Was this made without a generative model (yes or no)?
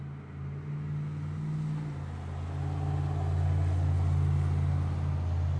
yes